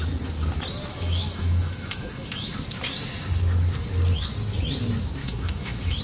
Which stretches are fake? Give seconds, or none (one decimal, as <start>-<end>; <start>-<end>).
0.9-2.5; 5.2-6.0